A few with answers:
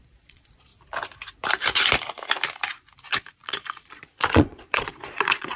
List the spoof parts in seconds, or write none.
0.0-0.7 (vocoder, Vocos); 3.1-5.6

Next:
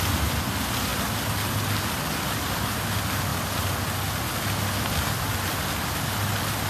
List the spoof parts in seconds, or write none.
none